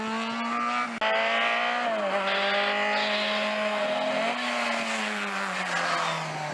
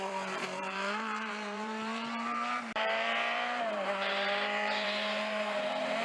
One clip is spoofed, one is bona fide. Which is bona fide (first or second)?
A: first